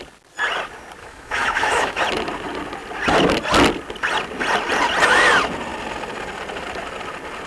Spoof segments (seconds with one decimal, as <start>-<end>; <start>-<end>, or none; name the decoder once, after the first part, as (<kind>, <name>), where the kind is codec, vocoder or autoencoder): 1.0-2.0 (autoencoder, DAC-VAE)